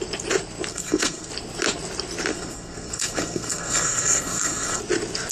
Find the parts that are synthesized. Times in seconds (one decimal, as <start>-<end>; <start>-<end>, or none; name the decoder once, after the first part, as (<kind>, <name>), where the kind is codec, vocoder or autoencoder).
0.7-1.3 (codec, SNAC); 2.3-4.8